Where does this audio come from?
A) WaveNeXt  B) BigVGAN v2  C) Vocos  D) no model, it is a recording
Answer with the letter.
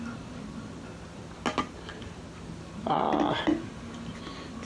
D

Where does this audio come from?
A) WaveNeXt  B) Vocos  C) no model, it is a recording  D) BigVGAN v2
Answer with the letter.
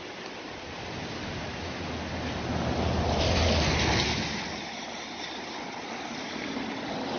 C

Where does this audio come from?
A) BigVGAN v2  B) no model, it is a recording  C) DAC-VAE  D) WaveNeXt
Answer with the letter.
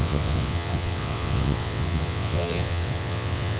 D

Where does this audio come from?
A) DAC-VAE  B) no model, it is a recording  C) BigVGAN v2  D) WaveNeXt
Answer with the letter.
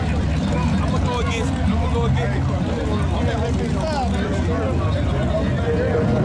B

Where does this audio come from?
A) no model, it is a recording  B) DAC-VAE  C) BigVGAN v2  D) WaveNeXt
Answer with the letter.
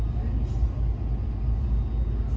A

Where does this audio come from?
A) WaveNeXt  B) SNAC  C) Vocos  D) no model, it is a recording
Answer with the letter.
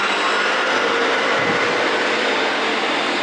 D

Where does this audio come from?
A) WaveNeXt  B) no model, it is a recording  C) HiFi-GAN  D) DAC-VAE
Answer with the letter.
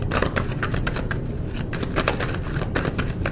B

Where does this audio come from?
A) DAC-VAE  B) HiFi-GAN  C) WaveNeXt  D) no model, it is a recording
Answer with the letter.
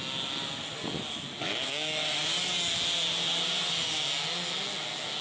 D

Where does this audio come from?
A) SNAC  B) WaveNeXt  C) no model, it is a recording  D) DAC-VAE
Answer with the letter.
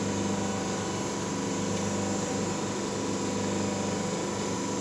C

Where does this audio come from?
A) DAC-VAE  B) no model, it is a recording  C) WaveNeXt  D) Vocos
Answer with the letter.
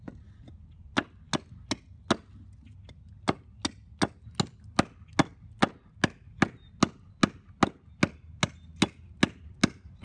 B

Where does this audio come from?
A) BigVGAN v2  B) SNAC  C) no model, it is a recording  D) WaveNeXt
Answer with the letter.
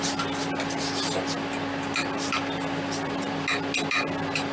C